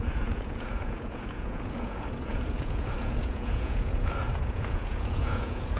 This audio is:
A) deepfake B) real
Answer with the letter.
A